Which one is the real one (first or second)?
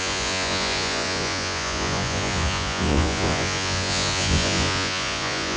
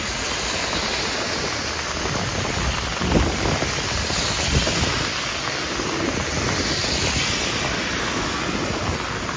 second